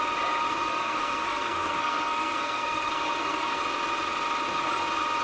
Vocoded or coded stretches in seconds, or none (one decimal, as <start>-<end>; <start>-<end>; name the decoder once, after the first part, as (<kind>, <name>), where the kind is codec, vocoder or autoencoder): 0.5-3.6 (codec, SNAC)